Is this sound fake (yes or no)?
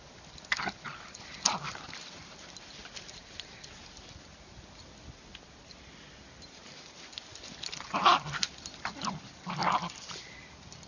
no